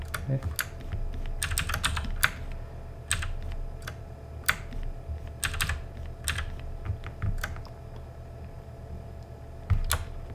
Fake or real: real